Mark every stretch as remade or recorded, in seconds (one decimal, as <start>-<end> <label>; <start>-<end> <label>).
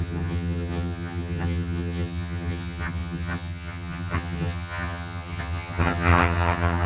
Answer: 0.0-6.9 remade